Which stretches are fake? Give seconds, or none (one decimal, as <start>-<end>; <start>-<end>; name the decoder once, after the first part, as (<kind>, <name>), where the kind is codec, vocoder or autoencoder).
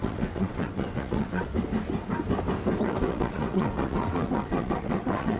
0.0-1.5 (vocoder, WaveNeXt); 2.8-5.4